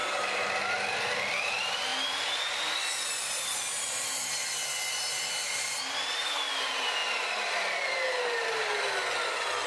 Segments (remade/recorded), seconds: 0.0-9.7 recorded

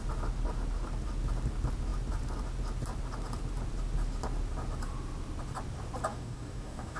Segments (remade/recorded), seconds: 0.0-6.1 recorded; 6.1-7.0 remade

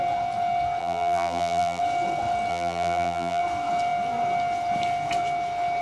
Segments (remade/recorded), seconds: 0.0-0.8 recorded; 0.8-1.8 remade; 1.8-2.5 recorded; 2.5-3.4 remade; 3.4-5.8 recorded